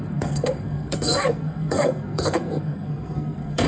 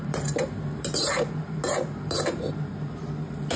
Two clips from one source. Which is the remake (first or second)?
first